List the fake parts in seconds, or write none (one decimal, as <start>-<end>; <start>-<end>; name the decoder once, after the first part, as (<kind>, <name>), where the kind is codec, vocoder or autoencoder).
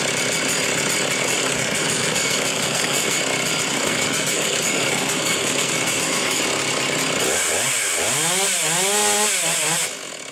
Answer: 1.2-3.2 (codec, SNAC); 3.7-6.4